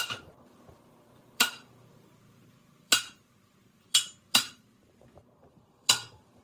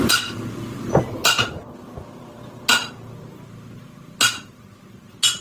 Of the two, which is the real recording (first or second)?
second